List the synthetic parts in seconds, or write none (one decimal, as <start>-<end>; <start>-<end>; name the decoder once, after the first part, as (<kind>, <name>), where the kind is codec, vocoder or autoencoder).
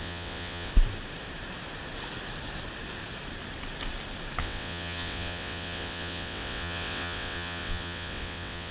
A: 0.0-0.7 (vocoder, WaveNeXt); 4.4-8.7